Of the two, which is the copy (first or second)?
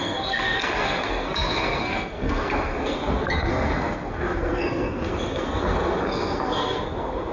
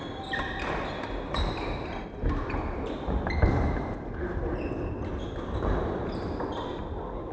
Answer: first